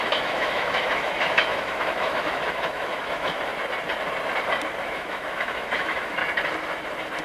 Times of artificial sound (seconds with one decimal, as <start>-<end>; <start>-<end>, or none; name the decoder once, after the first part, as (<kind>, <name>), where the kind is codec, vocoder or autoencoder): 0.0-3.5 (autoencoder, DAC-VAE); 4.8-6.2